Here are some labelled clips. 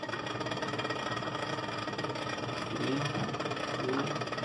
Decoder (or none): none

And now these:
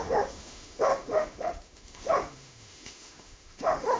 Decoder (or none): autoencoder, DAC-VAE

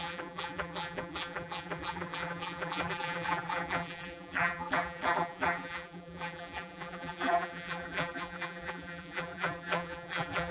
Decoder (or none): vocoder, BigVGAN v2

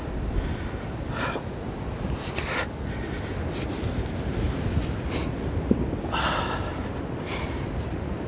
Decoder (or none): none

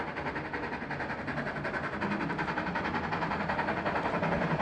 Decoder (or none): none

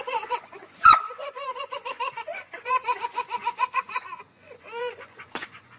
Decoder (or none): vocoder, Vocos